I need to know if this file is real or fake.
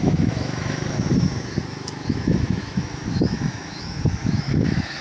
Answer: fake